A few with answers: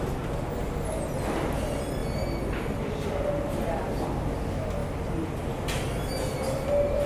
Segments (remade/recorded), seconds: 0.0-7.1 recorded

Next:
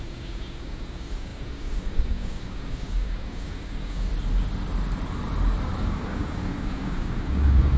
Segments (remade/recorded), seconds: 0.0-4.1 remade; 4.1-5.8 recorded; 5.8-7.8 remade